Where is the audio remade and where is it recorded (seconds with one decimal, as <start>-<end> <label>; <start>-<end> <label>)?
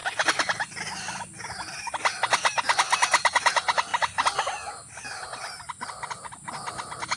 0.0-7.2 recorded